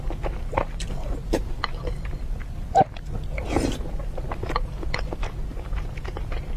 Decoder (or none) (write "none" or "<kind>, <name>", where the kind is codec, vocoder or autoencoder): none